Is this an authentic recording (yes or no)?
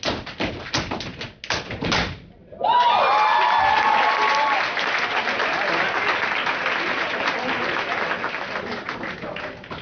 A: yes